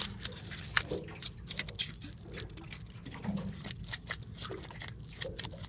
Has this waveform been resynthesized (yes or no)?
no